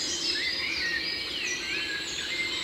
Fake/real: real